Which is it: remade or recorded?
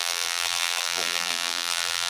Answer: remade